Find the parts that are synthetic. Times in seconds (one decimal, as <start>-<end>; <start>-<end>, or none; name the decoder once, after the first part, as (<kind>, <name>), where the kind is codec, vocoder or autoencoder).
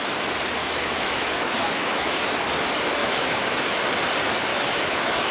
0.6-2.3 (autoencoder, DAC-VAE); 3.0-3.8; 4.5-5.3